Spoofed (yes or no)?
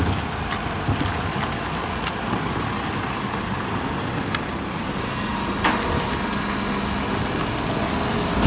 no